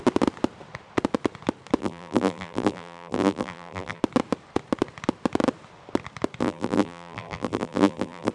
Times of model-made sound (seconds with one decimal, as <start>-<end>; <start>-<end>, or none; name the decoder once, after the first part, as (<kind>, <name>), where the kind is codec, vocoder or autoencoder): 1.8-4.0 (vocoder, BigVGAN v2); 6.4-8.3